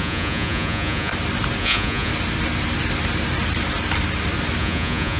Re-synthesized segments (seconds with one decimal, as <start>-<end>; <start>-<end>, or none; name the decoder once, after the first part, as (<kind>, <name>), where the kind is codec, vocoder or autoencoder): 0.0-1.1 (vocoder, Vocos); 1.6-2.1; 4.6-5.2